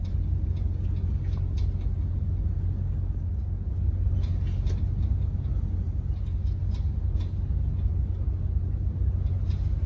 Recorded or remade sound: recorded